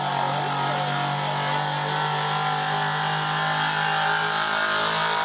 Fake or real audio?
real